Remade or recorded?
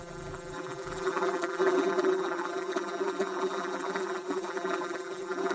remade